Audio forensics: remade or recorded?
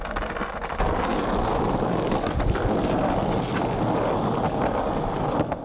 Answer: recorded